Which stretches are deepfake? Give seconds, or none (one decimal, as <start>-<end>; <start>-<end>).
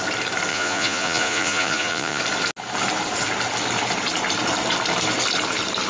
0.5-2.2